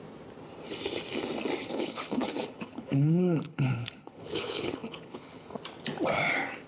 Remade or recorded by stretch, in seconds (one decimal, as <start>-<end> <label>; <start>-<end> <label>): 0.0-1.6 recorded; 1.6-5.6 remade; 5.6-6.7 recorded